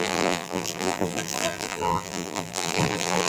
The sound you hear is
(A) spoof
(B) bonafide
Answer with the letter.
A